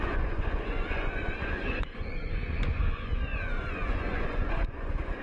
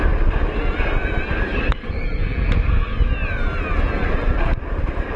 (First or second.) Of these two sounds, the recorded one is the second